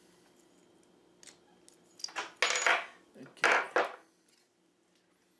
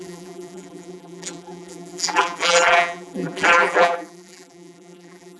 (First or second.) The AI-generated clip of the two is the second